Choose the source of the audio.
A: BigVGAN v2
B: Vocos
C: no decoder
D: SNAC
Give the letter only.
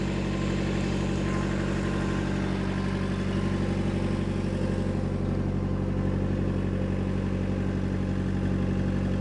C